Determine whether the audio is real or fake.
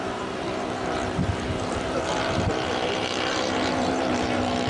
fake